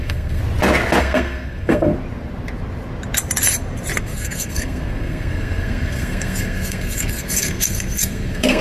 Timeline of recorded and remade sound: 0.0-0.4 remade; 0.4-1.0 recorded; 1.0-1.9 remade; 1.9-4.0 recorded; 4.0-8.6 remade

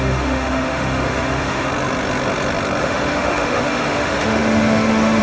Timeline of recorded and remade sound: 0.0-1.7 remade; 1.7-2.8 recorded; 2.8-5.2 remade